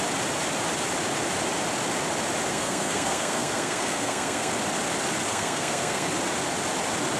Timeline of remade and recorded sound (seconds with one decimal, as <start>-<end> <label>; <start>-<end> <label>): 0.0-2.5 recorded; 2.5-4.5 remade; 4.5-5.3 recorded; 5.3-6.1 remade; 6.1-7.2 recorded